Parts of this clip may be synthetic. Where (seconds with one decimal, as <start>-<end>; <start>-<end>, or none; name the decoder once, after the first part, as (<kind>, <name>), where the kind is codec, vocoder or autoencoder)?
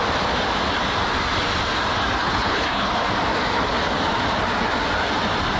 2.2-2.9 (codec, HILCodec)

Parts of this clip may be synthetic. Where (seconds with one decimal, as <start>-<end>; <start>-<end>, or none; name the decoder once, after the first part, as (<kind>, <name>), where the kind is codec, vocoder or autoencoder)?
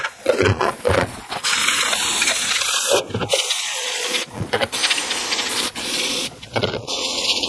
0.0-1.6 (vocoder, Vocos); 3.6-4.8; 5.5-7.5